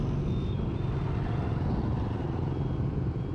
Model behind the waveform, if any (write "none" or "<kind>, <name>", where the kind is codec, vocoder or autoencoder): none